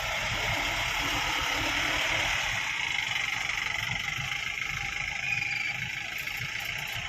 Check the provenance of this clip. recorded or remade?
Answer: recorded